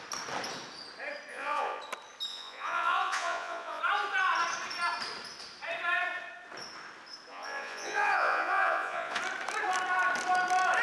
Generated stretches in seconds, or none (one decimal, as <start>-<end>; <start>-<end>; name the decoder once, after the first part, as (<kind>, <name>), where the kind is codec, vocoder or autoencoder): 1.3-1.8 (vocoder, Vocos); 2.3-3.8; 7.3-9.2